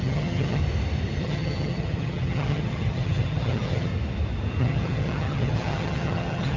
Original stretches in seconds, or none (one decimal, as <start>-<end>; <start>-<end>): 0.6-1.2; 3.9-4.6